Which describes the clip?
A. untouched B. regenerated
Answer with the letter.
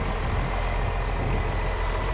A